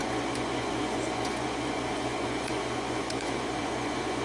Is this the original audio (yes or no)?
no